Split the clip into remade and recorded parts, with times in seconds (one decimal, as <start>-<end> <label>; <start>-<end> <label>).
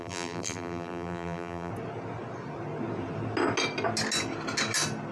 0.0-1.7 remade; 1.7-5.1 recorded